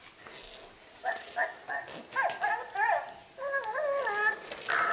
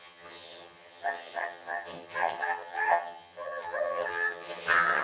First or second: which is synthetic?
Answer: second